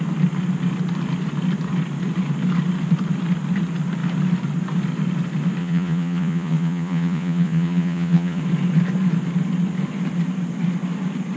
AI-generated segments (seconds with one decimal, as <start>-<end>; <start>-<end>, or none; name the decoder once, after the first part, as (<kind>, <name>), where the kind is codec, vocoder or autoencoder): 5.6-8.4 (vocoder, Vocos)